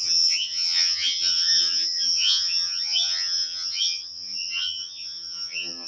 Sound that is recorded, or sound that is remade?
remade